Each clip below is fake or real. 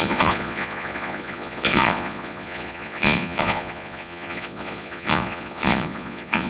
fake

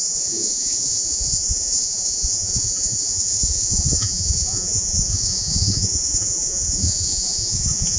fake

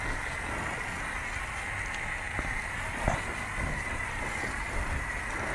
real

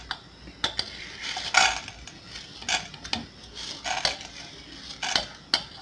real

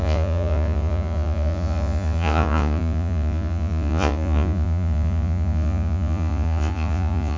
fake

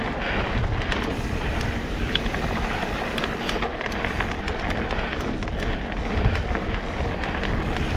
real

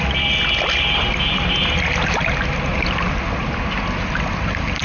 real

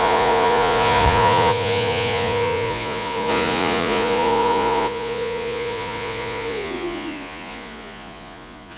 fake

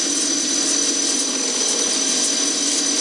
real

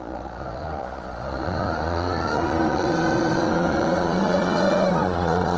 fake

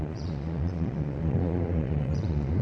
fake